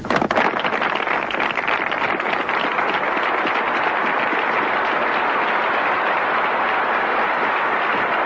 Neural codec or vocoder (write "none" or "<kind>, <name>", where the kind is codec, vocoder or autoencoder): none